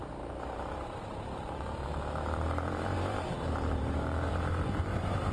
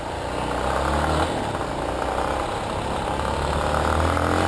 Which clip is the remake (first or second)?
first